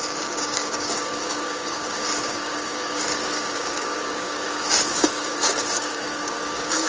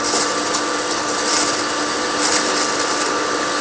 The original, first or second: second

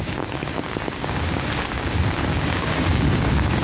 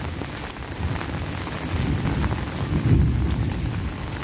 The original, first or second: second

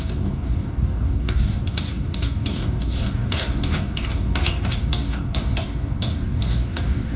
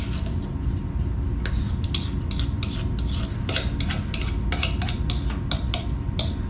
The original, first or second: second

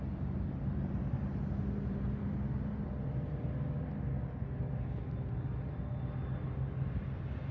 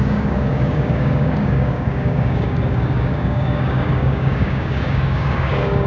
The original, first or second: first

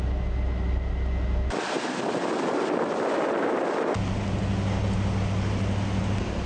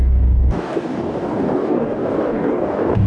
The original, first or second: first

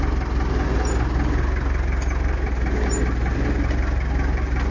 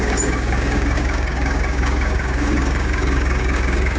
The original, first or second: first